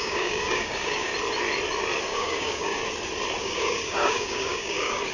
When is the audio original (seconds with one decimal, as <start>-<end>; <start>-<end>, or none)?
1.1-2.0; 2.8-3.4